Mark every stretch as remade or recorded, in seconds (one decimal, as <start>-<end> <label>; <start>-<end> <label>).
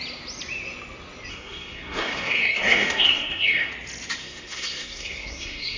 0.0-1.3 recorded; 1.3-3.7 remade; 3.7-4.2 recorded; 4.2-5.8 remade